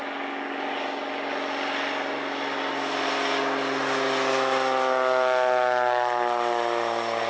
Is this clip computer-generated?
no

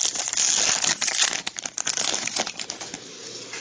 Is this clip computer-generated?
no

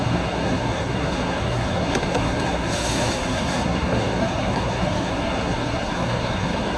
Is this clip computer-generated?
yes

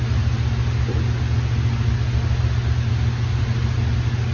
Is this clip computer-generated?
no